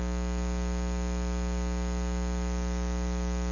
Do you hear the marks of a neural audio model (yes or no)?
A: no